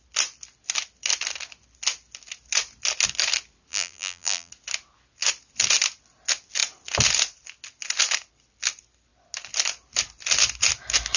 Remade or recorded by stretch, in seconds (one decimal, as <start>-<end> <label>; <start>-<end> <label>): 0.0-3.7 recorded; 3.7-4.5 remade; 4.5-11.2 recorded